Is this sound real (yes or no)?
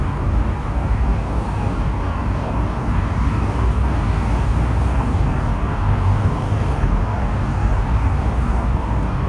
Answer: no